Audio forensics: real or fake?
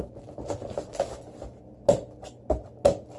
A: real